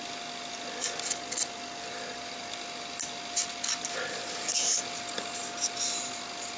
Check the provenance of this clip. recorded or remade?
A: recorded